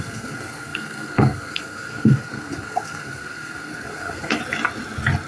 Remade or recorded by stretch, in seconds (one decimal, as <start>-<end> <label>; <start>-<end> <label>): 0.0-4.4 remade; 4.4-5.3 recorded